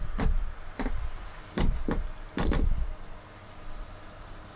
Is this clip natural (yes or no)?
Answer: yes